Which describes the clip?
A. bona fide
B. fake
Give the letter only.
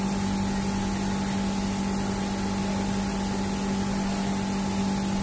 A